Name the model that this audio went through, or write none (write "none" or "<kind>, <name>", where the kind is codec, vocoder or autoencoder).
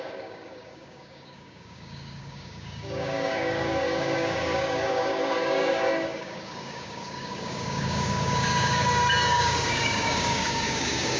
codec, DAC